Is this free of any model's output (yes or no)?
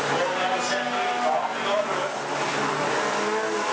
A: yes